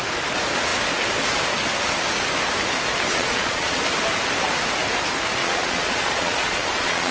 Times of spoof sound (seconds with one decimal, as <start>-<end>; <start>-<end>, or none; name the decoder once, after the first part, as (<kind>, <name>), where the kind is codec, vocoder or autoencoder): 3.1-3.8 (vocoder, Vocos); 5.4-7.1